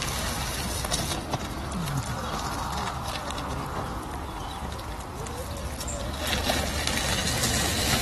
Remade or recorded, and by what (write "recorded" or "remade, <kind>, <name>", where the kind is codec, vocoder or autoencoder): recorded